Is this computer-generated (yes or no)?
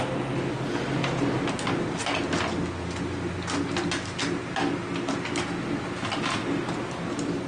no